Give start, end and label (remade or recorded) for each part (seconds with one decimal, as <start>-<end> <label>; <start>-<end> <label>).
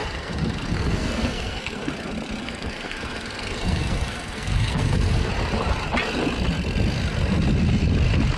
0.0-1.9 remade; 1.9-2.4 recorded; 2.4-5.3 remade; 5.3-8.4 recorded